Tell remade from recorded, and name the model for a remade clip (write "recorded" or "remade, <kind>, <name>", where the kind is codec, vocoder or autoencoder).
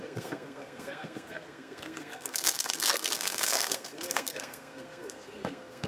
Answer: remade, codec, SNAC